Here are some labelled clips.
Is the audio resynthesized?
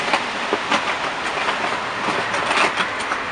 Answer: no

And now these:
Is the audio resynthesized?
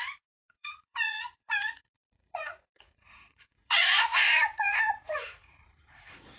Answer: yes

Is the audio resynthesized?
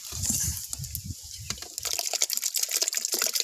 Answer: no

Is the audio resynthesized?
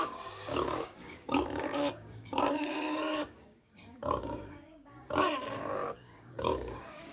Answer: yes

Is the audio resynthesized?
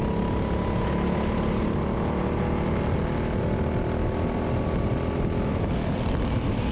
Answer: no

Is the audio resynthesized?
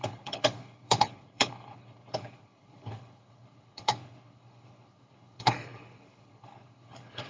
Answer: yes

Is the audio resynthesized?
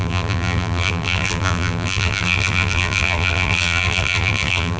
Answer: yes